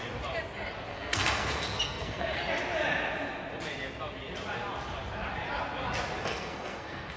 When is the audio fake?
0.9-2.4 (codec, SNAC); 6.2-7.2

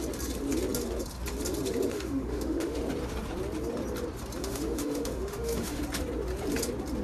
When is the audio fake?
1.9-2.8 (autoencoder, DAC-VAE); 4.4-5.8

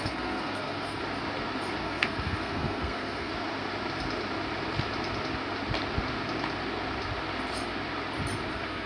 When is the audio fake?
0.0-1.0 (codec, SNAC); 1.8-3.3; 8.5-8.9

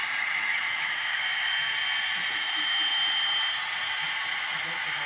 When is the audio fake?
0.0-1.2 (autoencoder, DAC-VAE)